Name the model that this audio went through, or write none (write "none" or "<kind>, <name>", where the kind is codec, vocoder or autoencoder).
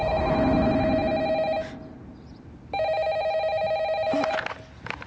none